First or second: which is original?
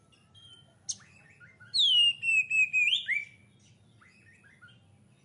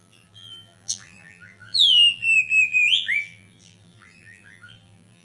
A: first